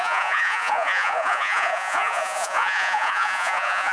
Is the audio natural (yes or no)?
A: no